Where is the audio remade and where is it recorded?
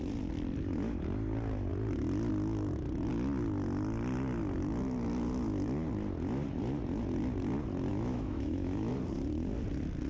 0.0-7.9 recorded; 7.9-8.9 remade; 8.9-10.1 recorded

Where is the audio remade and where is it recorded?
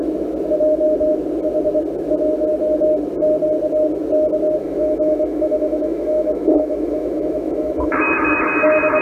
0.0-4.6 recorded; 4.6-9.0 remade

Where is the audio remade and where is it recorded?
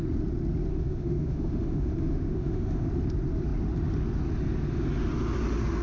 0.0-0.7 recorded; 0.7-2.9 remade; 2.9-5.8 recorded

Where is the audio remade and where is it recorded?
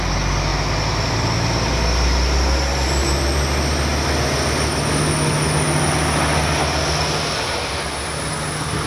0.0-8.9 recorded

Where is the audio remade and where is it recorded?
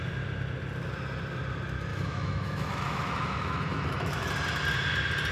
0.0-1.9 recorded; 1.9-4.3 remade; 4.3-5.3 recorded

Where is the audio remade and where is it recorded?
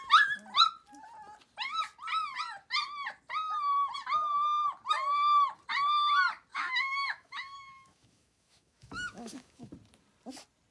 0.0-6.5 recorded; 6.5-9.7 remade; 9.7-10.7 recorded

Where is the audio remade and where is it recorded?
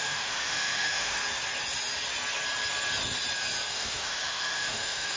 0.0-1.2 remade; 1.2-3.7 recorded; 3.7-5.2 remade